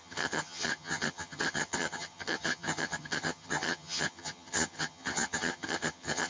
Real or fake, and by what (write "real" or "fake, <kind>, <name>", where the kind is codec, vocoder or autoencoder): fake, vocoder, HiFi-GAN